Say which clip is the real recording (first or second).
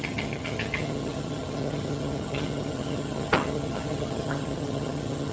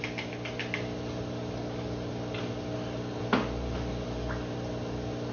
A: second